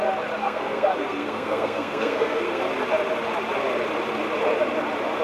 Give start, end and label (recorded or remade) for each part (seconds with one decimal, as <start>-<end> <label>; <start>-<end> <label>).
0.0-0.4 recorded; 0.4-2.6 remade; 2.6-5.2 recorded